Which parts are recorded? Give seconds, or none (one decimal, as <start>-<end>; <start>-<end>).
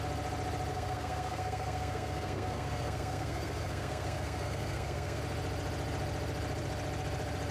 0.0-0.7; 5.2-7.5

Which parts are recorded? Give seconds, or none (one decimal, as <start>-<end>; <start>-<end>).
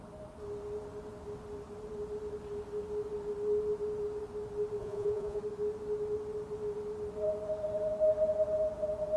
0.0-4.8; 5.4-9.2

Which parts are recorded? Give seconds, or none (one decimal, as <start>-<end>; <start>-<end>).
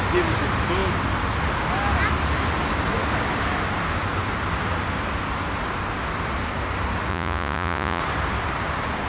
0.0-7.1; 8.0-9.1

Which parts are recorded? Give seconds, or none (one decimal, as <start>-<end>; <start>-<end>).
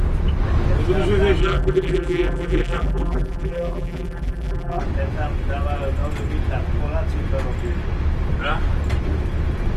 0.0-1.4; 4.8-9.8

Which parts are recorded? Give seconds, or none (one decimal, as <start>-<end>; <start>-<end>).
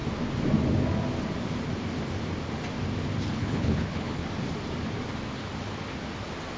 0.0-3.3; 4.2-6.6